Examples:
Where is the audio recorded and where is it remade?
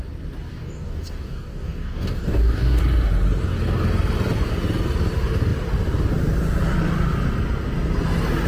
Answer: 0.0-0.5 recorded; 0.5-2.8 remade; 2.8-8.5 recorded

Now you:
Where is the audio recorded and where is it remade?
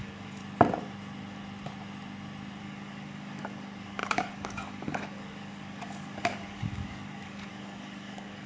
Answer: 0.0-0.4 remade; 0.4-2.6 recorded; 2.6-8.5 remade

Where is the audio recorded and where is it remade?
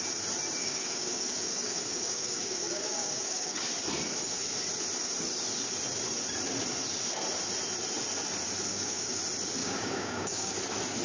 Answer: 0.0-0.6 recorded; 0.6-3.6 remade; 3.6-8.7 recorded; 8.7-9.2 remade; 9.2-9.6 recorded; 9.6-10.5 remade; 10.5-11.0 recorded